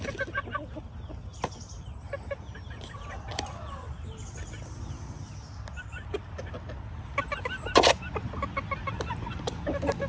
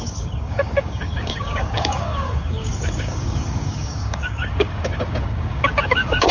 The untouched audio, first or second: first